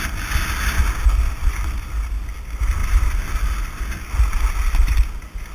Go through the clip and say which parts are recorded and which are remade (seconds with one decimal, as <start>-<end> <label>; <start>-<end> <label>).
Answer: 0.0-1.4 recorded; 1.4-2.2 remade; 2.2-2.8 recorded; 2.8-4.1 remade; 4.1-5.5 recorded